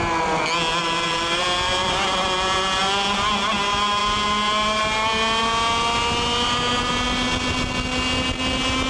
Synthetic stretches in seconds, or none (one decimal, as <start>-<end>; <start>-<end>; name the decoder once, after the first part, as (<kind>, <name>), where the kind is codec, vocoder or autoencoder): 0.8-1.4 (vocoder, BigVGAN v2)